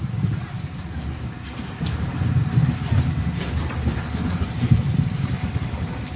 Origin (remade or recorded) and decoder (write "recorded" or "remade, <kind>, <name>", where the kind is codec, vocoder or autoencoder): recorded